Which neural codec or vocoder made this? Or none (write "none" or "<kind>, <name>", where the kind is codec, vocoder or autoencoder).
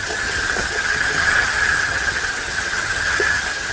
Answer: vocoder, HiFi-GAN